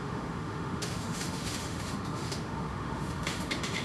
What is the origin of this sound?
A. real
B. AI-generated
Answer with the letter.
B